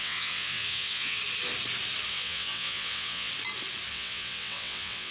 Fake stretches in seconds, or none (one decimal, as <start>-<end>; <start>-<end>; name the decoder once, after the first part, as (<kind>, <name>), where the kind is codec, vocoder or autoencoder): 0.0-1.2 (vocoder, WaveNeXt); 2.1-3.3; 3.9-5.1